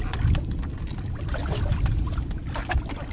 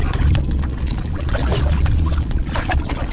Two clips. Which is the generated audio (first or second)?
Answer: second